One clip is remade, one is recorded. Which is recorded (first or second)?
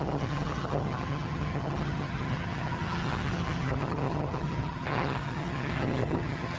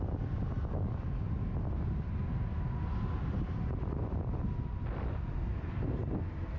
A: second